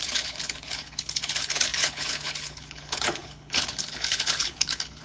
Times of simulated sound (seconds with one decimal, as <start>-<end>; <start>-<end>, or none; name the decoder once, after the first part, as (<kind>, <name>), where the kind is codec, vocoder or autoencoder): 0.0-5.0 (codec, HILCodec)